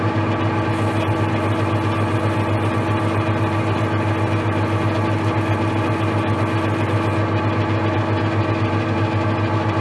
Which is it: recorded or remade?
recorded